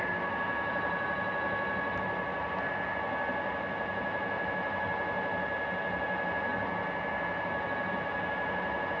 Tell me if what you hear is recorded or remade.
recorded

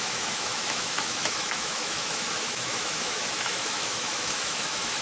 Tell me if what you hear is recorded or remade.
remade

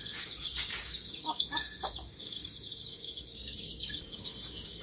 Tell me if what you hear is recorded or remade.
remade